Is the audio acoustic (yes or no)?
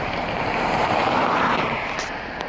yes